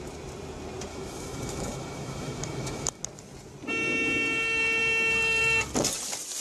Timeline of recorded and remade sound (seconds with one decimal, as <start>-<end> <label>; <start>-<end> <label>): 0.0-0.9 recorded; 0.9-3.0 remade; 3.0-6.4 recorded